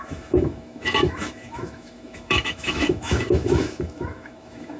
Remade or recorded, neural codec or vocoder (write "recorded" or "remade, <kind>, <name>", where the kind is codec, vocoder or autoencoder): remade, autoencoder, DAC-VAE